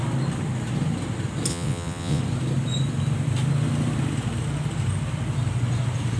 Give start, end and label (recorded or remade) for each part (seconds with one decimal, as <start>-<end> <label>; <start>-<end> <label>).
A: 0.0-1.5 recorded; 1.5-2.2 remade; 2.2-6.2 recorded